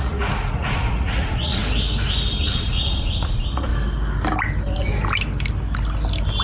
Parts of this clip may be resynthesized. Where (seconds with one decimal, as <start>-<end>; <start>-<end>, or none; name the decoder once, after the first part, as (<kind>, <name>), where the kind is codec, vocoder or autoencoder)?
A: 0.0-1.6 (vocoder, Vocos); 2.4-3.7

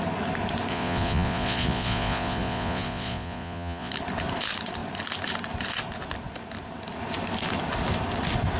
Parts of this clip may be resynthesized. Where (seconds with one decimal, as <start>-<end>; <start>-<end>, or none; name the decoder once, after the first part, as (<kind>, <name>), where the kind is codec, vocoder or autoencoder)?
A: 0.7-3.9 (vocoder, Vocos)

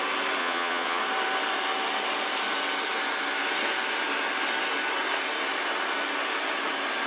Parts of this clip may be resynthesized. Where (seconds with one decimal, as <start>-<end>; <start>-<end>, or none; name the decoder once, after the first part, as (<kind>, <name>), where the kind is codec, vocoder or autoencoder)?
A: 0.4-1.0 (vocoder, Vocos)

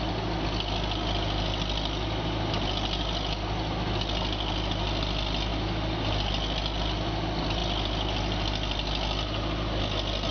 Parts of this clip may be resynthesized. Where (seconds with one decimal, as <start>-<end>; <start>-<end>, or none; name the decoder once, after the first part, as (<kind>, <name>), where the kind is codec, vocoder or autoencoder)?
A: none

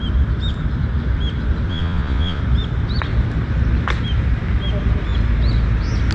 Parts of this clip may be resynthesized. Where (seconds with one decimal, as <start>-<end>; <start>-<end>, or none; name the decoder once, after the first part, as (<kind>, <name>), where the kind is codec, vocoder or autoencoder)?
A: 1.7-2.4 (vocoder, Vocos)

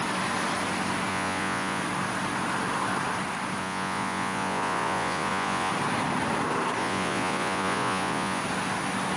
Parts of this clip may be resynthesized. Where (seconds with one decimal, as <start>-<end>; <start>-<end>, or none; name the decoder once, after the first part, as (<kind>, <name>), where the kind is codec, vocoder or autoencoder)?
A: 1.1-1.8 (vocoder, Vocos); 3.6-5.7; 6.8-8.4